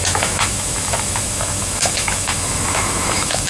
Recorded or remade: remade